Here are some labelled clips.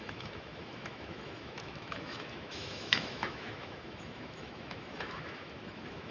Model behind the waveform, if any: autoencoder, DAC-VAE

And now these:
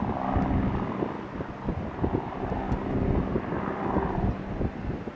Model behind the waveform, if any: none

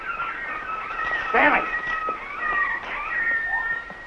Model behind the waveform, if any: vocoder, BigVGAN v2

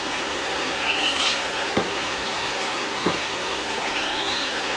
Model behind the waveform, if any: codec, SNAC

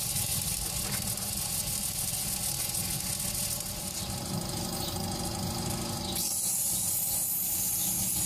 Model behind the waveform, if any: none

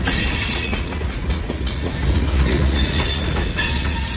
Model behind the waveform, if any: vocoder, Vocos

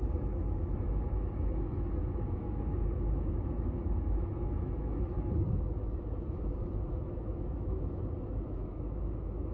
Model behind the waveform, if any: autoencoder, DAC-VAE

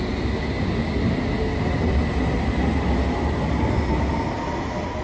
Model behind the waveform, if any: none